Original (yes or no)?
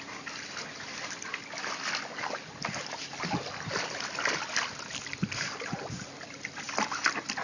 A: yes